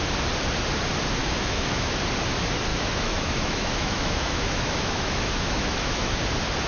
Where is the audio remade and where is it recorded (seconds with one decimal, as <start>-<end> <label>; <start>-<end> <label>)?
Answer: 0.0-1.2 recorded; 1.2-2.0 remade; 2.0-2.7 recorded; 2.7-6.2 remade; 6.2-6.7 recorded